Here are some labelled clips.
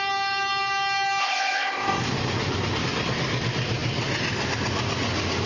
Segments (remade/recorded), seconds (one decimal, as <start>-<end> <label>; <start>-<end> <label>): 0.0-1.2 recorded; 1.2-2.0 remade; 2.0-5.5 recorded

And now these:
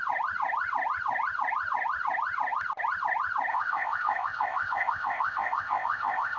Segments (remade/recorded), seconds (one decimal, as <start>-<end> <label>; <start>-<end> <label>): 0.0-3.5 recorded; 3.5-6.4 remade

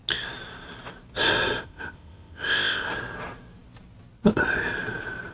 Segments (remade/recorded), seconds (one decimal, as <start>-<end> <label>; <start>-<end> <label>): 0.0-1.6 recorded; 1.6-2.9 remade; 2.9-5.3 recorded

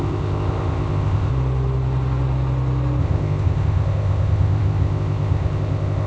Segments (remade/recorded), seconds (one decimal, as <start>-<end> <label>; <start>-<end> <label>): 0.0-1.3 remade; 1.3-3.0 recorded; 3.0-6.1 remade

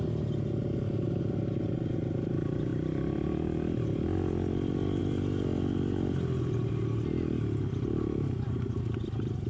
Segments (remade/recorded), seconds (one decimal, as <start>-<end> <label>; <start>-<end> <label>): 0.0-9.5 recorded

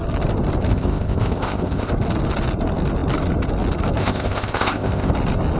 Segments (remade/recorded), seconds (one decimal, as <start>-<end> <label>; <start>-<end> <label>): 0.0-0.7 recorded; 0.7-1.9 remade; 1.9-4.0 recorded; 4.0-5.1 remade; 5.1-5.6 recorded